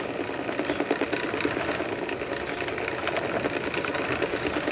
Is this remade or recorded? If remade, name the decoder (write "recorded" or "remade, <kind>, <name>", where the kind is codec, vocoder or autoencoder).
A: recorded